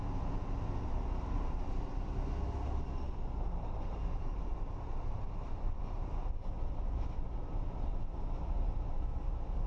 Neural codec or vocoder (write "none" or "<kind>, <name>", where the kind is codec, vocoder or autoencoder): none